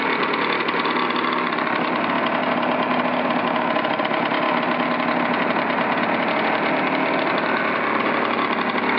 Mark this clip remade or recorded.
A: recorded